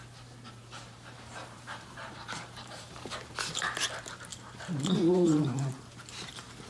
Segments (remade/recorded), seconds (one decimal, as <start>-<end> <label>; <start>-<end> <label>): 0.0-0.6 recorded; 0.6-2.9 remade; 2.9-4.3 recorded; 4.3-5.4 remade; 5.4-6.7 recorded